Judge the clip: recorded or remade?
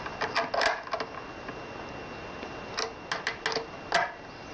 recorded